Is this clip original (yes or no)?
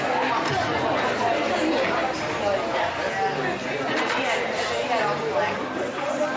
yes